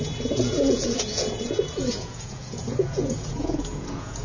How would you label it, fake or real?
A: fake